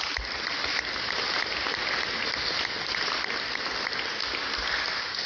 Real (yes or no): yes